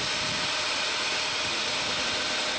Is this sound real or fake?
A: real